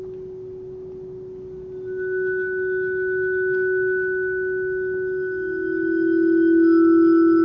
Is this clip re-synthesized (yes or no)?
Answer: no